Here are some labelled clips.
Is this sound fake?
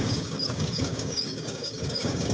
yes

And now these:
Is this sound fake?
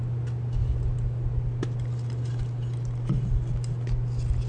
no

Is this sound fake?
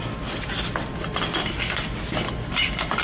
no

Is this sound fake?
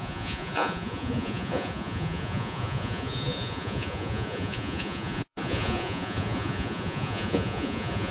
yes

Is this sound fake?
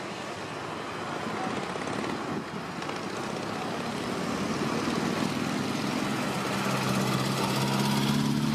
no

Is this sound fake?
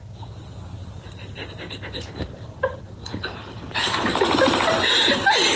no